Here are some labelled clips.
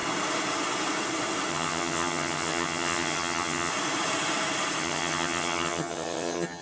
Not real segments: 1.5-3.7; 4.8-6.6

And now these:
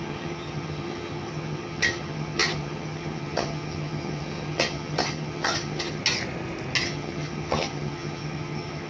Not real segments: 0.0-6.0; 6.8-8.9

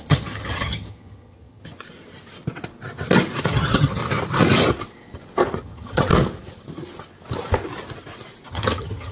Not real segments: 0.0-1.6; 3.5-4.0; 5.6-6.1; 8.5-9.1

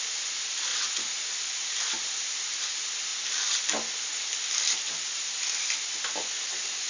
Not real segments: none